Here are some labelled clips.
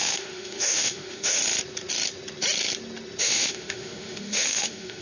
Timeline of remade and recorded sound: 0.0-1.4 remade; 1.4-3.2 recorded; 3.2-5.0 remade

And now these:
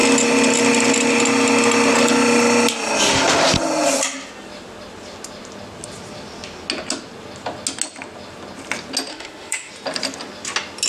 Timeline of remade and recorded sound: 0.0-9.1 recorded; 9.1-9.7 remade; 9.7-10.9 recorded

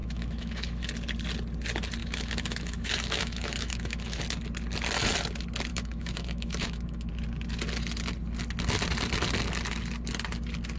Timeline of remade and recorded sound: 0.0-0.9 remade; 0.9-2.0 recorded; 2.0-4.2 remade; 4.2-5.7 recorded; 5.7-7.1 remade; 7.1-10.8 recorded

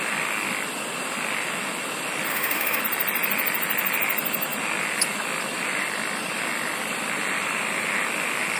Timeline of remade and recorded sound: 0.0-2.3 recorded; 2.3-2.8 remade; 2.8-8.6 recorded

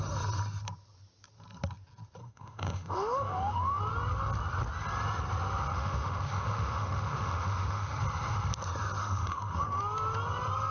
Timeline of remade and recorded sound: 0.0-2.2 recorded; 2.2-3.8 remade; 3.8-5.7 recorded; 5.7-8.0 remade; 8.0-9.0 recorded; 9.0-9.8 remade; 9.8-10.7 recorded

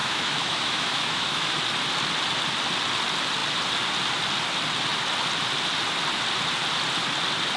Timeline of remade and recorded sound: 0.0-1.5 remade; 1.5-7.6 recorded

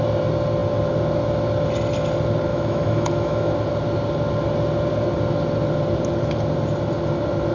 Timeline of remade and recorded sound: 0.0-2.5 recorded; 2.5-3.5 remade; 3.5-7.5 recorded